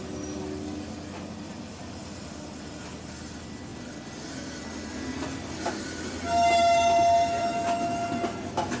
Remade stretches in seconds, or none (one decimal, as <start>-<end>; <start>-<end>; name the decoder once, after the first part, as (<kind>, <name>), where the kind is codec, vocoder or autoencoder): none